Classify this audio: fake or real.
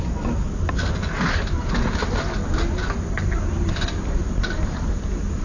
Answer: real